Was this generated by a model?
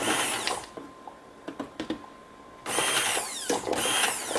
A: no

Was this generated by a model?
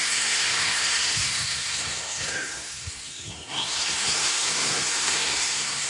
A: yes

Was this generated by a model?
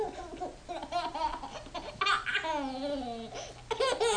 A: no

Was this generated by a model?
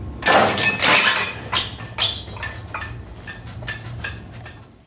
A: no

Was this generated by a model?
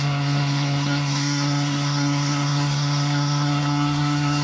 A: yes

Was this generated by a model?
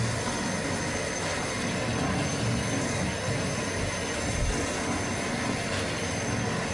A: no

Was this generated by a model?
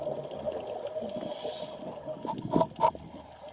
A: no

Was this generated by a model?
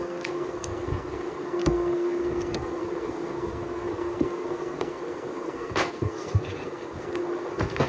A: yes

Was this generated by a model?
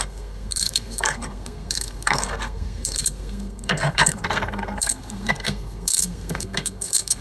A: yes